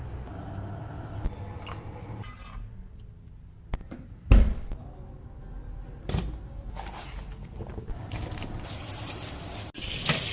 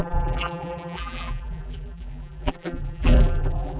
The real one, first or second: first